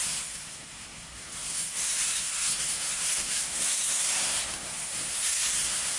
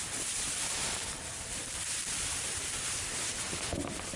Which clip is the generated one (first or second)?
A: first